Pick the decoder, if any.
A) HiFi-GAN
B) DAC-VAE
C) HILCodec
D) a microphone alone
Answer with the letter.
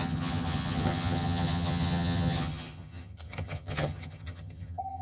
A